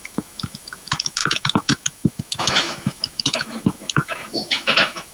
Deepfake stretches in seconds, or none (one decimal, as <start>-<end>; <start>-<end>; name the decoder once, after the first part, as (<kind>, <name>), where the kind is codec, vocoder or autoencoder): 0.0-5.1 (autoencoder, DAC-VAE)